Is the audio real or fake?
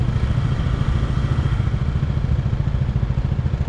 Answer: real